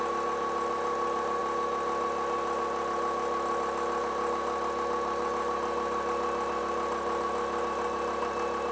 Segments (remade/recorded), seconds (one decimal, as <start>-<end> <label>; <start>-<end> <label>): 0.0-8.7 recorded